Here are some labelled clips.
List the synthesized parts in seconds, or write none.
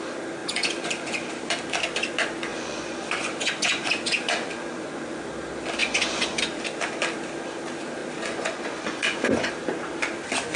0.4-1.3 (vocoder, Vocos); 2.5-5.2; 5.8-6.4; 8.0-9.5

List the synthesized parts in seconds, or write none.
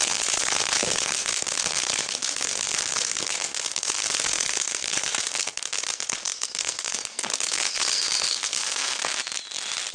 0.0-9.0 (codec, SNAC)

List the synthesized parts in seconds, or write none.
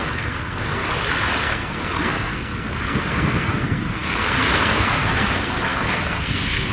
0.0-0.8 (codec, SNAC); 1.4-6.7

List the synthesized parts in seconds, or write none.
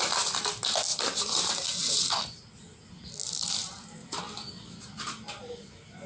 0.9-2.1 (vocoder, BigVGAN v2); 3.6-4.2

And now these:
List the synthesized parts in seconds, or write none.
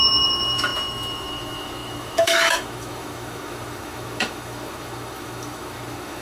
0.0-6.2 (autoencoder, DAC-VAE)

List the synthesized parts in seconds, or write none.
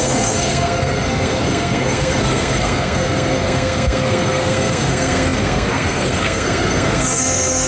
0.0-7.7 (codec, SNAC)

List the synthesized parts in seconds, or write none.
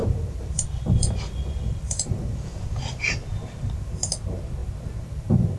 0.0-2.6 (vocoder, BigVGAN v2); 4.6-5.6